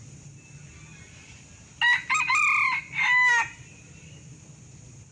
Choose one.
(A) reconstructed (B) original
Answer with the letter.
B